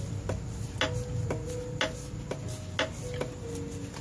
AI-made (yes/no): no